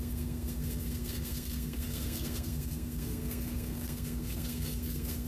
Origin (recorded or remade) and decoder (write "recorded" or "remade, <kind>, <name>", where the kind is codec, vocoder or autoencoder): remade, codec, SNAC